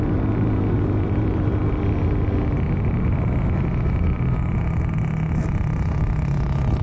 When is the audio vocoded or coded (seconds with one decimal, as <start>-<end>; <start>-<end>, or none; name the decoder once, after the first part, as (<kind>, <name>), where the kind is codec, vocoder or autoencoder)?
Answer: 0.0-1.6 (vocoder, BigVGAN v2); 5.3-6.8